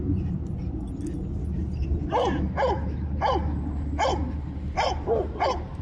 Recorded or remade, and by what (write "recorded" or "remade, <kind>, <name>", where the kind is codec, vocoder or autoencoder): recorded